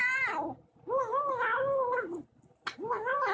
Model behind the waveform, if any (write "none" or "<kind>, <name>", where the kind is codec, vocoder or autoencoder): none